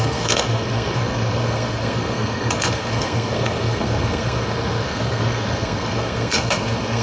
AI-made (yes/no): yes